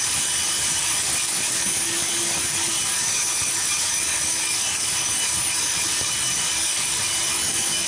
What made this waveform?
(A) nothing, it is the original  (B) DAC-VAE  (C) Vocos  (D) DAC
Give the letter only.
D